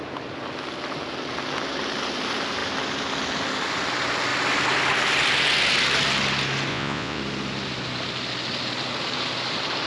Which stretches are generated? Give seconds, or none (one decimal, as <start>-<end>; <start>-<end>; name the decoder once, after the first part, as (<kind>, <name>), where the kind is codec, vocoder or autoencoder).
6.7-7.2 (vocoder, Vocos)